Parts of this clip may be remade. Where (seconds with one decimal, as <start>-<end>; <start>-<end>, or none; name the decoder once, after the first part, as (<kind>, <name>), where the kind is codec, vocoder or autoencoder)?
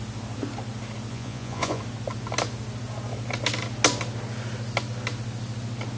1.1-1.8 (vocoder, Vocos)